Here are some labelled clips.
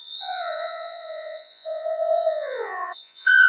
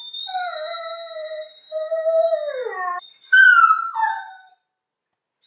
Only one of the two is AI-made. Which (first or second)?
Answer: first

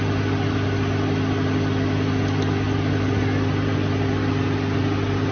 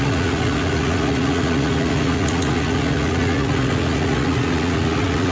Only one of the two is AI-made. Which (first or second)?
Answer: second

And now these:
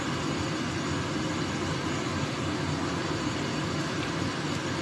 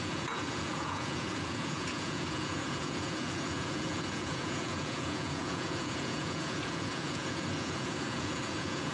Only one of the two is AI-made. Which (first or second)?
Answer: second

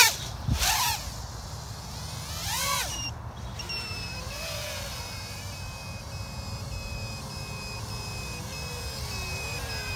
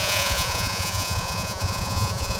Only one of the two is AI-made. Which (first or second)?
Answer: second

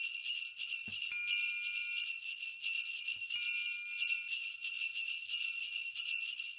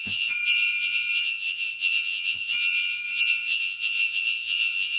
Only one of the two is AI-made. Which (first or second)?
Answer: second